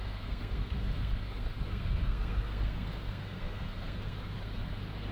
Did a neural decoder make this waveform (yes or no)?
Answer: yes